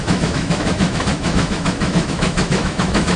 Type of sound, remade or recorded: remade